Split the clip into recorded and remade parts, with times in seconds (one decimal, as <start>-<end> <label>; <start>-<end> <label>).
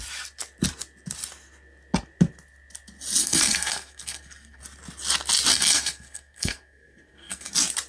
0.0-3.2 recorded; 3.2-4.6 remade; 4.6-5.5 recorded; 5.5-7.5 remade; 7.5-7.9 recorded